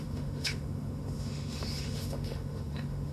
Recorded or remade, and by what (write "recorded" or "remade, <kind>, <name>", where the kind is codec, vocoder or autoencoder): remade, autoencoder, DAC-VAE